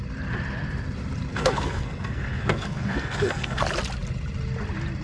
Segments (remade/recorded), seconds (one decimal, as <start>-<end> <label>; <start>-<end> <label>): 0.0-1.3 recorded; 1.3-3.6 remade; 3.6-5.0 recorded